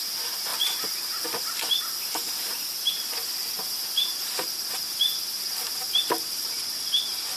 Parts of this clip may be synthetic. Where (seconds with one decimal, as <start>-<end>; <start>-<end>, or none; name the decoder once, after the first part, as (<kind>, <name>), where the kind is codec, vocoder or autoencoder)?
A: 0.5-1.8 (vocoder, BigVGAN v2)